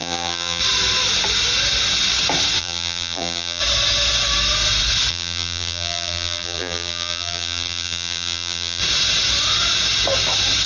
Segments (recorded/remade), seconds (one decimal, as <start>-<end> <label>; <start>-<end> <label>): 0.0-0.6 remade; 0.6-2.6 recorded; 2.6-3.6 remade; 3.6-5.1 recorded; 5.1-8.8 remade; 8.8-10.7 recorded

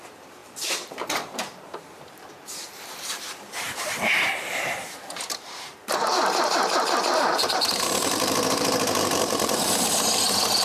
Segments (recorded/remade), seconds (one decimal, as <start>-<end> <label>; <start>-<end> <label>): 0.0-10.6 remade